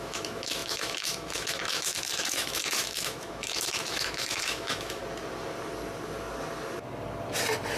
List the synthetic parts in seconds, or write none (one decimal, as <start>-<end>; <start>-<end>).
0.0-5.0